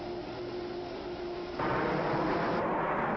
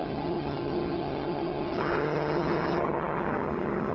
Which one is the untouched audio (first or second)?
first